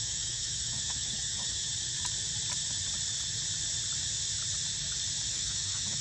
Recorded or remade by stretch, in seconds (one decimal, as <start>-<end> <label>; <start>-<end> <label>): 0.0-1.7 remade; 1.7-5.3 recorded; 5.3-6.0 remade